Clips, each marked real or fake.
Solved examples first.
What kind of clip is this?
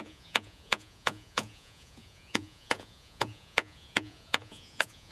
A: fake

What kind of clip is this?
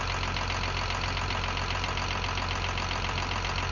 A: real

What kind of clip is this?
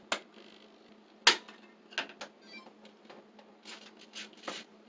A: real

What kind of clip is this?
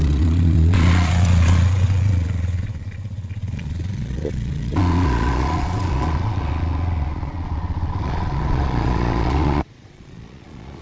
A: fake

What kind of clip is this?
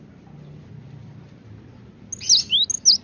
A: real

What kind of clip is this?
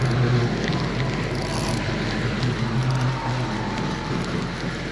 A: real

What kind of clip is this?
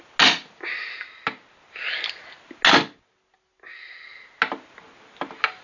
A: real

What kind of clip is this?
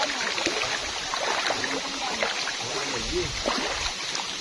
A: real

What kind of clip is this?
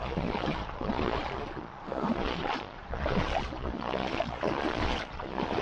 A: fake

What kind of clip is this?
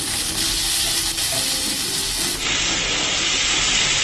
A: real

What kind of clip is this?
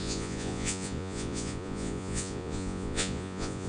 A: fake